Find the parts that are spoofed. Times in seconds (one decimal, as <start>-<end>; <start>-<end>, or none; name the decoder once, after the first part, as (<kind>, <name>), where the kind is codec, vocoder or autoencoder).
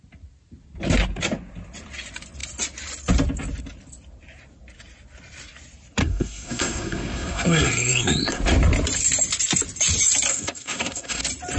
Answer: 6.0-8.4 (codec, SNAC); 10.3-11.2